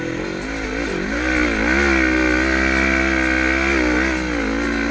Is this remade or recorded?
recorded